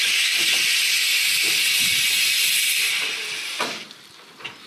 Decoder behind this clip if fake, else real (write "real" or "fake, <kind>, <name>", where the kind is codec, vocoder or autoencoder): real